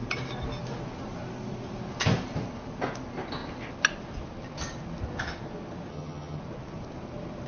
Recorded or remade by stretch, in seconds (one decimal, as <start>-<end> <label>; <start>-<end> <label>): 0.0-5.9 recorded; 5.9-6.4 remade; 6.4-7.5 recorded